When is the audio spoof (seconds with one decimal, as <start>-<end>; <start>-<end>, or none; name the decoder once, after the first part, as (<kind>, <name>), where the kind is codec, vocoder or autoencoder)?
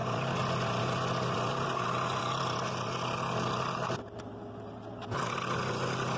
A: none